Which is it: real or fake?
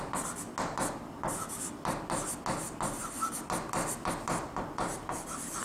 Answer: real